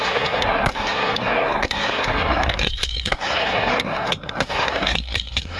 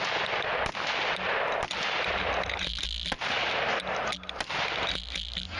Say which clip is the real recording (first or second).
second